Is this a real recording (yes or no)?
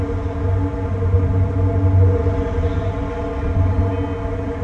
yes